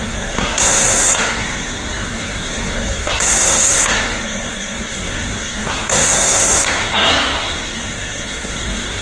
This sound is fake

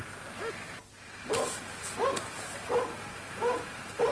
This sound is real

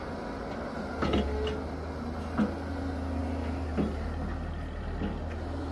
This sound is real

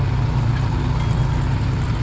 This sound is real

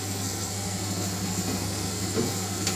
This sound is fake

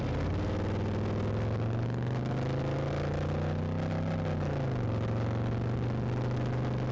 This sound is real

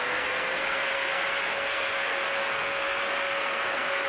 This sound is fake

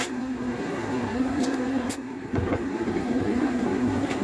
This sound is fake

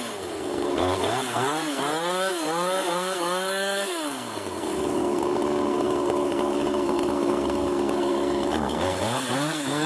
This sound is fake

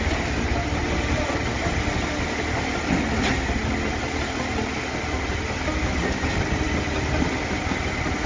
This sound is real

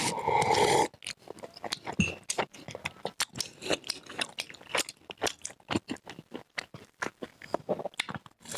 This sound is real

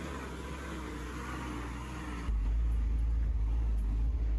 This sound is real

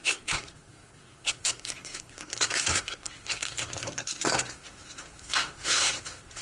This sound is fake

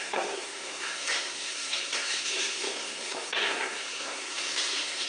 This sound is fake